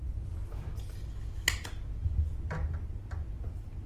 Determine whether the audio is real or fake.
real